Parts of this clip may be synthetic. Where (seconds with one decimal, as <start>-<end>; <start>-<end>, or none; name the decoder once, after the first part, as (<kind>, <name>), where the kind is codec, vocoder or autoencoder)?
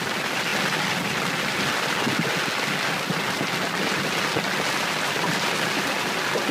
none